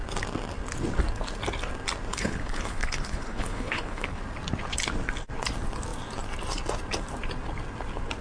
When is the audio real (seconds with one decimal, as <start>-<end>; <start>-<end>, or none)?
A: 0.0-2.1; 4.2-8.2